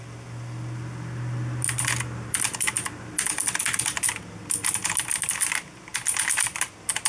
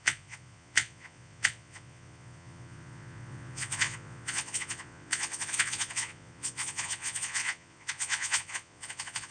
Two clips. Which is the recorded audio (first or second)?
first